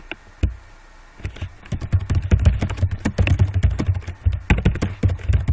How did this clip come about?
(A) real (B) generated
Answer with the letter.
A